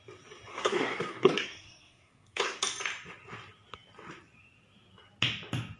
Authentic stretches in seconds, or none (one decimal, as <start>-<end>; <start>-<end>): 0.0-0.5; 2.6-5.8